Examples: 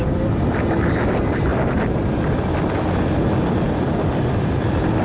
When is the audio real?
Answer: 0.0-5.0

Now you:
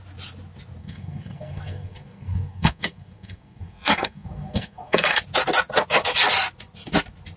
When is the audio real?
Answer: 0.0-0.8; 5.2-7.4

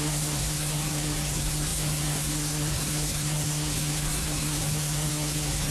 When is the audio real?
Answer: none